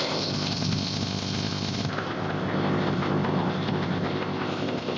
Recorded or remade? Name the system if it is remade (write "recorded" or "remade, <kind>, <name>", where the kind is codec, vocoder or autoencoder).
remade, codec, ZipCodec